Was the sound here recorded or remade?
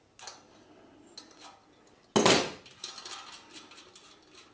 recorded